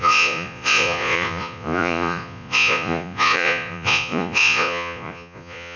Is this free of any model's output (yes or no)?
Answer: no